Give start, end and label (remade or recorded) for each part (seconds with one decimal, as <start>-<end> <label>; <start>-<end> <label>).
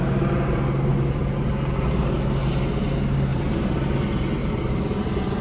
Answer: 0.0-3.3 recorded; 3.3-3.9 remade; 3.9-4.4 recorded; 4.4-5.4 remade